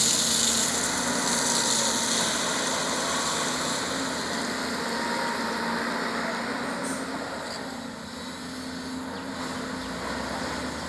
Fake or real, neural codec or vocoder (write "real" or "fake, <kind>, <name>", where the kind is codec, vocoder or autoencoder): real